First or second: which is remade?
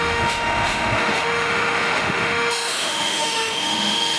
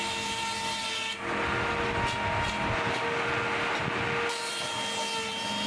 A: first